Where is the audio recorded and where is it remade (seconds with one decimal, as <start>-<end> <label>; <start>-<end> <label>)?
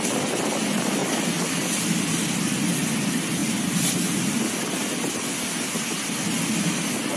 0.0-7.2 recorded